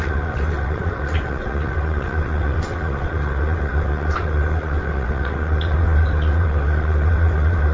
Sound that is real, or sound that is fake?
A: fake